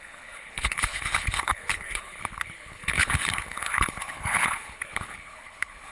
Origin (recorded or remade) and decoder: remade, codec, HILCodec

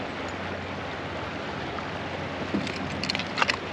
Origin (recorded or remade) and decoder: recorded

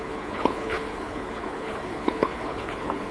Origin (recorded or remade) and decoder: remade, codec, HILCodec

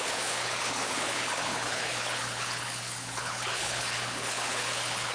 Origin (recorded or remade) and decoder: remade, codec, HILCodec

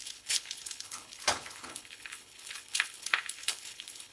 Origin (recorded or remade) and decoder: remade, codec, HILCodec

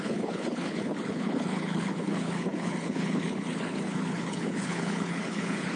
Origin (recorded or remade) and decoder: remade, codec, HILCodec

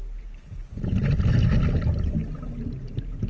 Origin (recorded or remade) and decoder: recorded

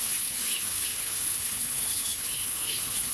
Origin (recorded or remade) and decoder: remade, codec, HILCodec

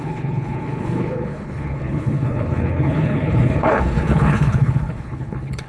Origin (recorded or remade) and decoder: remade, codec, HILCodec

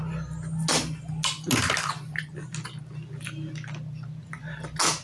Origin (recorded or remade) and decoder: recorded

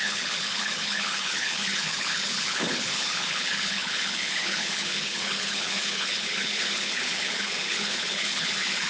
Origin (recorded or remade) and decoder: remade, codec, HILCodec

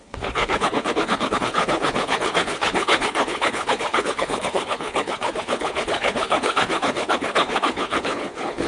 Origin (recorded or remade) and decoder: remade, codec, HILCodec